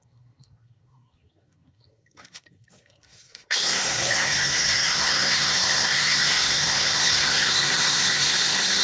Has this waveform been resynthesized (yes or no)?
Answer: yes